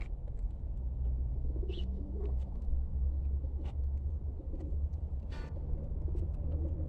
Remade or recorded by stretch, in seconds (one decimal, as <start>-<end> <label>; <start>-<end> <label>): 0.0-1.3 recorded; 1.3-4.1 remade; 4.1-6.9 recorded